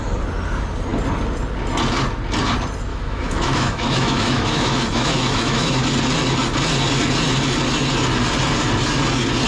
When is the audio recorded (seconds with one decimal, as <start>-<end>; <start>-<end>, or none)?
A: 0.0-2.9; 5.8-9.5